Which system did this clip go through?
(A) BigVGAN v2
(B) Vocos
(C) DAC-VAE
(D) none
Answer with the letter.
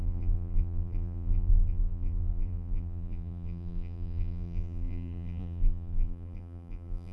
A